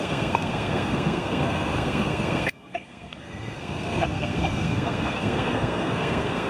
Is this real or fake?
fake